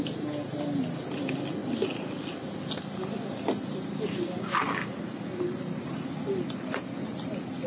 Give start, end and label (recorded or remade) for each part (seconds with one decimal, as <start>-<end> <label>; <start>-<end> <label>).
0.0-7.7 recorded